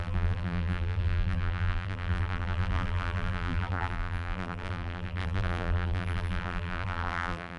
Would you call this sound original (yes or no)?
no